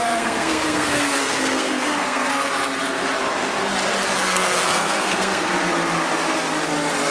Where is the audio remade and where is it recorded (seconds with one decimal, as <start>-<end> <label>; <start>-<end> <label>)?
0.0-2.3 remade; 2.3-4.1 recorded; 4.1-5.5 remade; 5.5-7.1 recorded